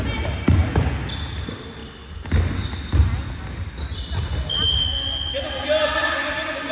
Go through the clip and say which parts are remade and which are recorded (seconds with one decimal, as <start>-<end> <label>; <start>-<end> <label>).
0.0-6.7 recorded